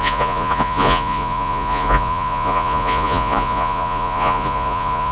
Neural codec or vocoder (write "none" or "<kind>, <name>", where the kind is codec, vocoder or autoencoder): vocoder, Vocos